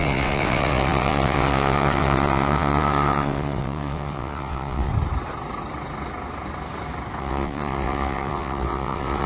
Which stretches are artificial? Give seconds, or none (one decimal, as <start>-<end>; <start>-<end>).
0.0-4.9; 7.2-9.3